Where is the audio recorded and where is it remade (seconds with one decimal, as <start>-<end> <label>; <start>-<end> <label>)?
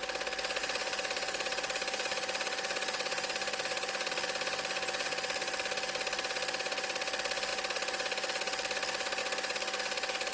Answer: 0.0-0.6 recorded; 0.6-4.1 remade; 4.1-10.3 recorded